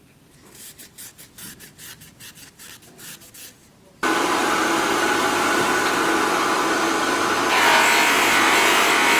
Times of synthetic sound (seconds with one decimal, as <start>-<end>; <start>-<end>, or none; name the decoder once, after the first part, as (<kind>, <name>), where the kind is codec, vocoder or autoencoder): 3.6-5.6 (vocoder, BigVGAN v2)

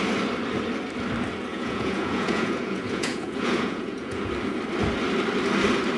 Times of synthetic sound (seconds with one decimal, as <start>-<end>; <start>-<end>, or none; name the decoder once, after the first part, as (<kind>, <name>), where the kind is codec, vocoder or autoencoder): 1.5-4.3 (vocoder, Vocos)

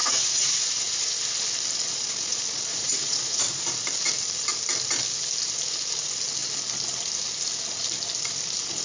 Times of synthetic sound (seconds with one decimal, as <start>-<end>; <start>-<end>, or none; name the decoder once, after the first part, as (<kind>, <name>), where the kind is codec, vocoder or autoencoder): 0.0-1.1 (vocoder, Vocos); 2.7-3.4

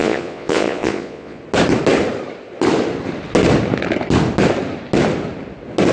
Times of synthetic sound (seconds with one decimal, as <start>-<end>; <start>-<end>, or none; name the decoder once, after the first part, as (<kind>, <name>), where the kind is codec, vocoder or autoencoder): 0.0-1.4 (vocoder, Vocos)